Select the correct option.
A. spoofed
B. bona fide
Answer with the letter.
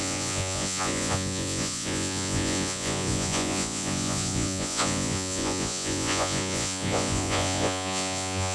A